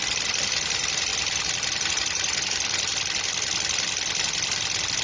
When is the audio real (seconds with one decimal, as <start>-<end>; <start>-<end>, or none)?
0.0-5.0